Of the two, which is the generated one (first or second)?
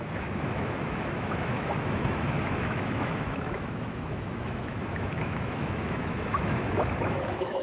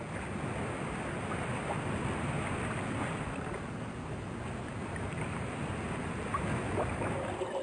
first